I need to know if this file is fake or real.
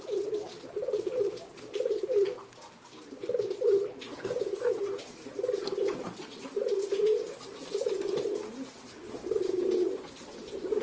fake